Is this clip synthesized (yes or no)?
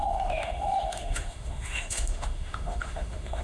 yes